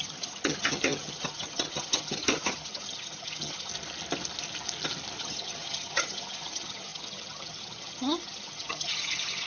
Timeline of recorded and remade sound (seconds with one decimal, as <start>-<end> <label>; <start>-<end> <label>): 0.0-3.7 remade; 3.7-5.2 recorded; 5.2-9.5 remade